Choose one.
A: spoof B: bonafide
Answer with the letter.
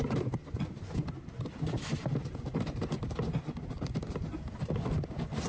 B